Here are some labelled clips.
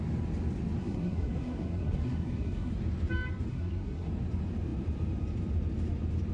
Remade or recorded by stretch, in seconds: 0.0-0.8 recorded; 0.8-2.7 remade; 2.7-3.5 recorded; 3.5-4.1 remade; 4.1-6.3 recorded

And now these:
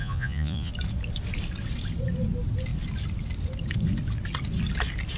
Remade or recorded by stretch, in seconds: 0.0-0.7 remade; 0.7-5.2 recorded